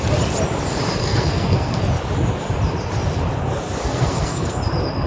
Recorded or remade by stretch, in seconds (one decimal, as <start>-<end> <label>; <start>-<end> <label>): 0.0-1.0 recorded; 1.0-1.8 remade; 1.8-3.9 recorded; 3.9-4.6 remade; 4.6-5.1 recorded